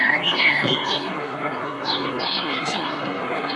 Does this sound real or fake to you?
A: fake